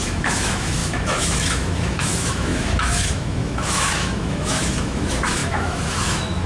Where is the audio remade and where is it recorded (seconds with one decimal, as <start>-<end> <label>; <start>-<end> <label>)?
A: 0.0-6.5 remade